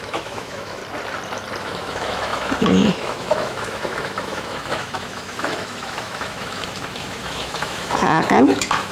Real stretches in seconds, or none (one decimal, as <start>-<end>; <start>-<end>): 0.8-1.6